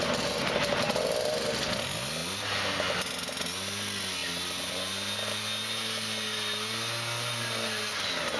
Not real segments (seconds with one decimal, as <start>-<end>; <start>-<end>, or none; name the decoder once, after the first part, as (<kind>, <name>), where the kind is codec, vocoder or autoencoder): none